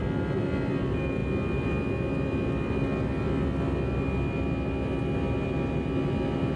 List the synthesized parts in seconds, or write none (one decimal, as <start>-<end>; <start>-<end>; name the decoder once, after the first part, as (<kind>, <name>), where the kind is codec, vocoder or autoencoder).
none